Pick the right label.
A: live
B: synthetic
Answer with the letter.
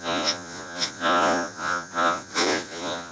B